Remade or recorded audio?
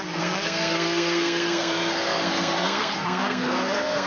remade